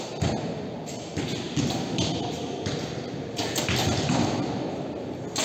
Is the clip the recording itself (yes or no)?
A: yes